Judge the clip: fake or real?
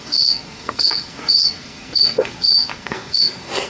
fake